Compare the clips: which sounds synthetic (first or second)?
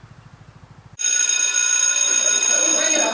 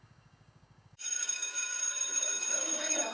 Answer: second